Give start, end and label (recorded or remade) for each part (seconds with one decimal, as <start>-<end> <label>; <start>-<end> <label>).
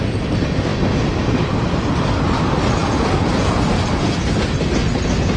0.0-2.8 recorded; 2.8-3.6 remade; 3.6-5.4 recorded